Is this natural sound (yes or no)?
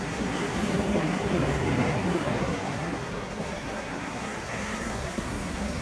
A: no